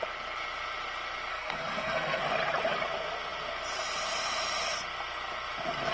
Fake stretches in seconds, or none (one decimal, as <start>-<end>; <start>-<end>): 1.3-2.2